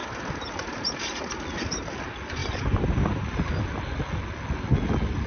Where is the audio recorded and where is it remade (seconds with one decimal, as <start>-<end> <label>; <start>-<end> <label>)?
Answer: 0.0-1.0 remade; 1.0-2.4 recorded; 2.4-3.5 remade; 3.5-5.3 recorded